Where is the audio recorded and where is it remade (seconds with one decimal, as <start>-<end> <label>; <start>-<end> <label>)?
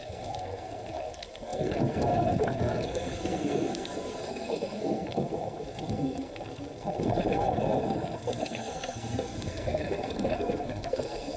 0.0-11.4 remade